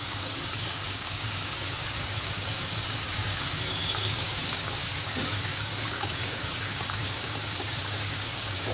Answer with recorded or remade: remade